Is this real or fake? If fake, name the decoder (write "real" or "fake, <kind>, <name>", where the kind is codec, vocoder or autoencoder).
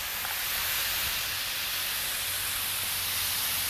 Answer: real